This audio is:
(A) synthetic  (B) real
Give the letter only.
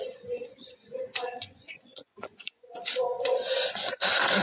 A